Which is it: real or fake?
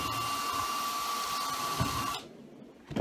real